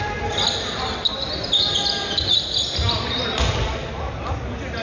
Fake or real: real